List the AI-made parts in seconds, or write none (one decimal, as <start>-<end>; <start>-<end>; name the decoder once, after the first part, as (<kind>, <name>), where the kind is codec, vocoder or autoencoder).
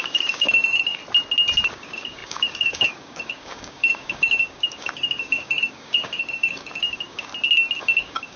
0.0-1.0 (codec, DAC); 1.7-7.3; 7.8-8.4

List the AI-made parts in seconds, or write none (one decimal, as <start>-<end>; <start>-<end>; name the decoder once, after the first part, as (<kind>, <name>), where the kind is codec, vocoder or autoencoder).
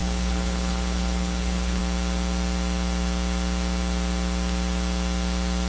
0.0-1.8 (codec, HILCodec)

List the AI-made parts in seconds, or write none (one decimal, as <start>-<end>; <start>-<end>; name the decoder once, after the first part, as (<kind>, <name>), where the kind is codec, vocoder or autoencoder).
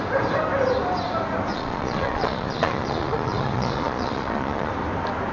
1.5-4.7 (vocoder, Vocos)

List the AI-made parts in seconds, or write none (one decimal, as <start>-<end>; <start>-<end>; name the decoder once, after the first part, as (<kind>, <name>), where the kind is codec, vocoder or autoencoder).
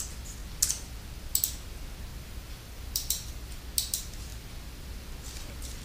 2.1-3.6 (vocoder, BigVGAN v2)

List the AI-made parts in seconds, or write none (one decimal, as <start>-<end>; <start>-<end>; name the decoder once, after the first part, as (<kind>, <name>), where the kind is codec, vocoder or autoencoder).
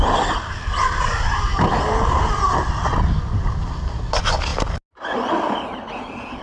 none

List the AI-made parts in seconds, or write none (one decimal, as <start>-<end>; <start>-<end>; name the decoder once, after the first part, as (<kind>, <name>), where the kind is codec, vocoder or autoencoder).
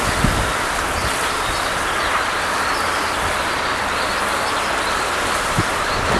none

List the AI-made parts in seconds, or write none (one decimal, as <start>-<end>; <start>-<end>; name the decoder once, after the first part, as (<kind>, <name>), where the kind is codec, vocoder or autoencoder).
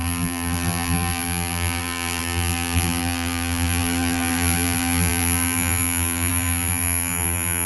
0.0-7.7 (vocoder, BigVGAN v2)